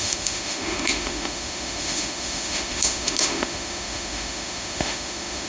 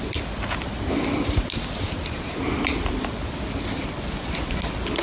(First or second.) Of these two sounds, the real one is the second